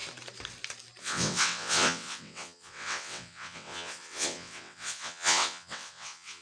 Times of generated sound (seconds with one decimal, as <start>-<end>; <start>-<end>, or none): 1.0-6.4